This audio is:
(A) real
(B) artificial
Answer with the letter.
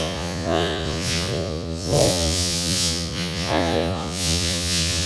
B